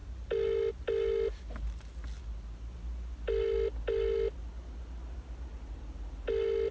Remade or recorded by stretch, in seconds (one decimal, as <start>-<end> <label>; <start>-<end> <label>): 0.0-6.7 recorded